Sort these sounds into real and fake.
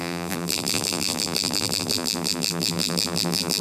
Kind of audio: fake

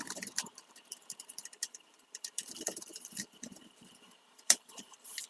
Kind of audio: fake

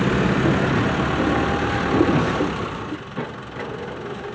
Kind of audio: real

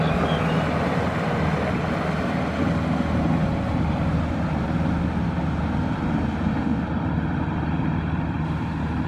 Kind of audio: real